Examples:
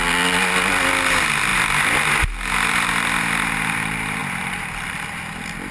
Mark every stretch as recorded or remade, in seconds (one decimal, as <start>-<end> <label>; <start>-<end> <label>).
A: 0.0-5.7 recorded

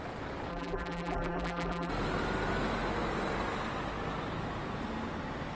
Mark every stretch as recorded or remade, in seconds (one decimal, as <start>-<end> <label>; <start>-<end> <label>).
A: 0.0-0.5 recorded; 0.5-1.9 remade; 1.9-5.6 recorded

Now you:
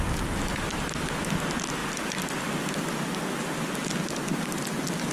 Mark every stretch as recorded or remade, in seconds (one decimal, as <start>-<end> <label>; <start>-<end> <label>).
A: 0.0-5.1 recorded

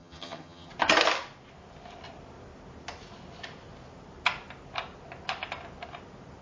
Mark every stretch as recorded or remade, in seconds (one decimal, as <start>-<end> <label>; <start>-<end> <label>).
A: 0.0-0.7 remade; 0.7-6.4 recorded

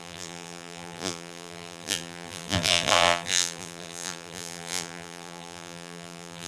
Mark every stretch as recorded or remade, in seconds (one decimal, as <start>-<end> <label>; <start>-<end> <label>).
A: 0.0-6.5 remade

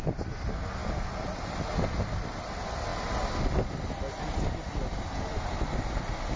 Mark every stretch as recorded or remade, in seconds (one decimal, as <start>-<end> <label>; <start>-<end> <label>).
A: 0.0-6.4 recorded

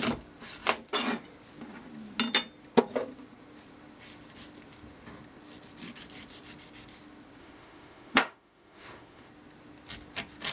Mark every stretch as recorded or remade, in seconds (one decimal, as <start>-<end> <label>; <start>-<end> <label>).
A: 0.0-7.4 recorded; 7.4-9.3 remade; 9.3-10.5 recorded